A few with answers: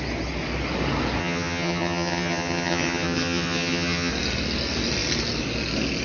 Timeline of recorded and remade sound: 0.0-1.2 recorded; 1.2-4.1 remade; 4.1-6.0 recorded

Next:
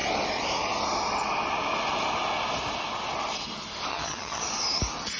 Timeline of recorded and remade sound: 0.0-3.9 recorded; 3.9-4.4 remade; 4.4-5.2 recorded

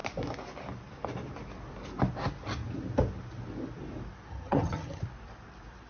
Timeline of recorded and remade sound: 0.0-4.3 recorded; 4.3-5.0 remade; 5.0-5.9 recorded

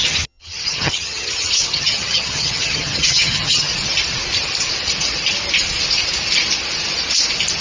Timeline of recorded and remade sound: 0.0-3.7 remade; 3.7-7.6 recorded

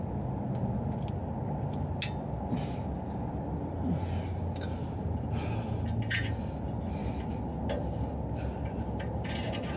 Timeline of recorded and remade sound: 0.0-9.8 recorded

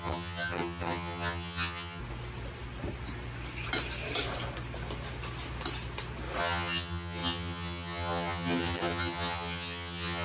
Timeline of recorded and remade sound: 0.0-2.0 remade; 2.0-6.4 recorded; 6.4-10.2 remade

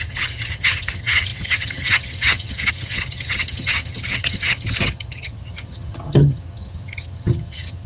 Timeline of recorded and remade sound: 0.0-7.9 remade